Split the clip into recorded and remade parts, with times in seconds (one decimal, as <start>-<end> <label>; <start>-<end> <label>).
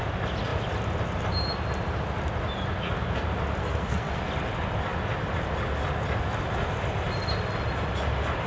0.0-3.6 recorded; 3.6-4.2 remade; 4.2-8.5 recorded